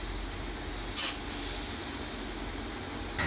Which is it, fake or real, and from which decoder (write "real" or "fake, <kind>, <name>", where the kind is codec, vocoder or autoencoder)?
real